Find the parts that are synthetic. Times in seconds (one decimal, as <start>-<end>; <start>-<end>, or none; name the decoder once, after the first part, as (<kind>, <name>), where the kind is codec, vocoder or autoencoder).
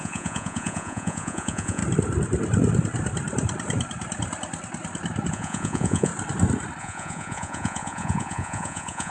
0.0-1.8 (vocoder, Vocos); 5.3-6.1; 6.8-9.1